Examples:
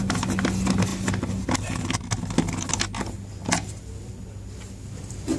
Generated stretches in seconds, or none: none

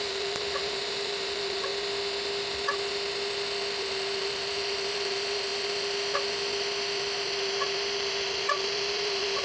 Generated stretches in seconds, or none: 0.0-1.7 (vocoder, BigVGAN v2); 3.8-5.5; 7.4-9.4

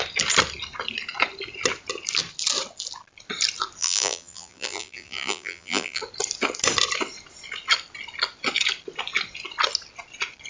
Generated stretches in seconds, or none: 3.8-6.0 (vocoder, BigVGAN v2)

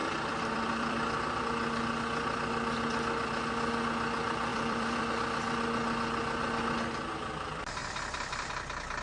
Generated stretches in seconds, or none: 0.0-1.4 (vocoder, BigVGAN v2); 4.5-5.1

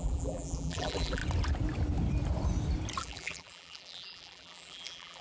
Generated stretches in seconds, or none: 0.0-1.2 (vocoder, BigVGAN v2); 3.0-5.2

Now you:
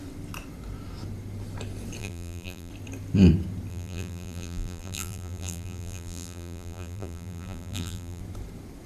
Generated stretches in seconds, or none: 2.0-2.7 (vocoder, BigVGAN v2); 3.7-8.2

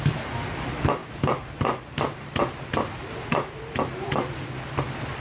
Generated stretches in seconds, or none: 1.0-4.1 (vocoder, BigVGAN v2)

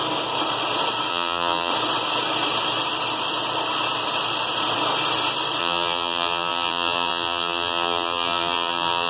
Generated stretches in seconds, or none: 1.1-1.7 (vocoder, BigVGAN v2); 5.6-9.1